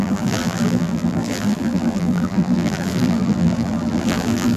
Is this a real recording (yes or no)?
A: no